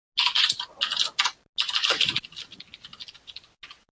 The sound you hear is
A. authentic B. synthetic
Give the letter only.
A